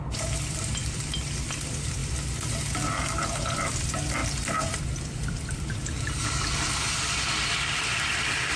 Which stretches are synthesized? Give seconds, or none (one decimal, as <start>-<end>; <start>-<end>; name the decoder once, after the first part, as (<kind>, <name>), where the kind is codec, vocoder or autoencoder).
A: 0.0-8.6 (vocoder, BigVGAN v2)